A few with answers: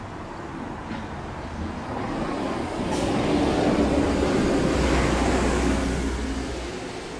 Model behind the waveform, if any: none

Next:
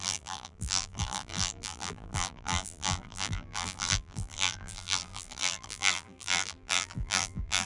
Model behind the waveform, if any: vocoder, BigVGAN v2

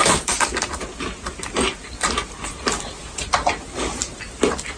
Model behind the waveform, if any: none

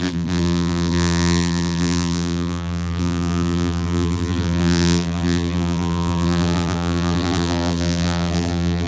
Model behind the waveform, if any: vocoder, BigVGAN v2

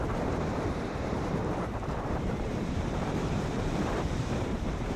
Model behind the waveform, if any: vocoder, BigVGAN v2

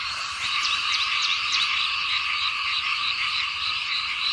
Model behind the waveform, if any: vocoder, BigVGAN v2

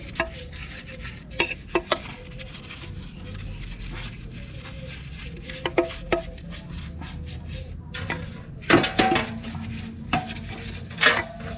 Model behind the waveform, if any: none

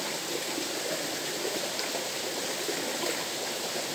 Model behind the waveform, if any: none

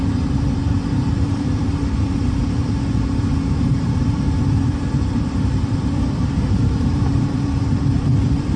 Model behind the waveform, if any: vocoder, BigVGAN v2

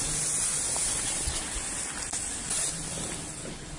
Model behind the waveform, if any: none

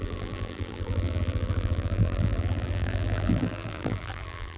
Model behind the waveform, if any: vocoder, BigVGAN v2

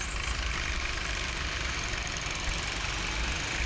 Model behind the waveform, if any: vocoder, BigVGAN v2